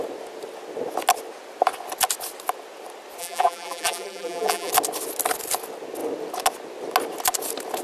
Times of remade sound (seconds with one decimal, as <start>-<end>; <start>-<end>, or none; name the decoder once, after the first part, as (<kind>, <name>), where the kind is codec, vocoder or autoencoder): 3.2-4.7 (vocoder, BigVGAN v2)